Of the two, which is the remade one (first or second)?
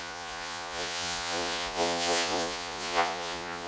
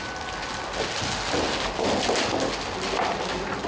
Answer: first